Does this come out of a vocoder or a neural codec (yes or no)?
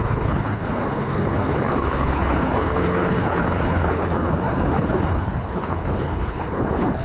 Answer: yes